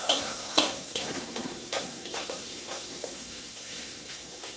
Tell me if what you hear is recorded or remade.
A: remade